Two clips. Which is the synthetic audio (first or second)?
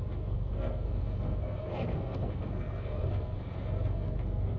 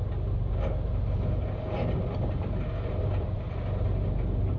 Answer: first